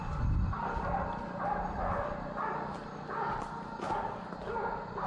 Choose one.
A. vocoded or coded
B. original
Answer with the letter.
B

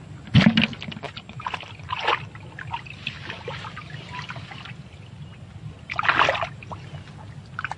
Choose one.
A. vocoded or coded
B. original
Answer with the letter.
B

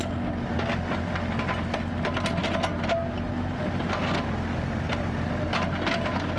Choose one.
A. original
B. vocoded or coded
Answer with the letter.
A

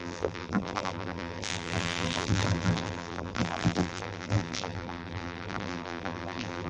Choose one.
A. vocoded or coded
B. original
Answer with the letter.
A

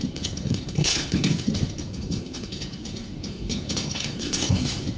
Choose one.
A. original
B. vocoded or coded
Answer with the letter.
B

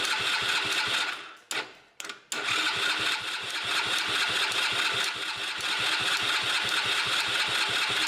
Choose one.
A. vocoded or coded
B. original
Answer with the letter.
B